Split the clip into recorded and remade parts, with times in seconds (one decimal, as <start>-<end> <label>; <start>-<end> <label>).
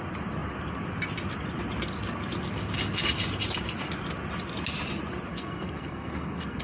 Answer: 0.0-5.3 recorded; 5.3-6.6 remade